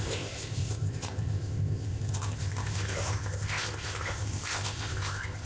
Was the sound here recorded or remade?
remade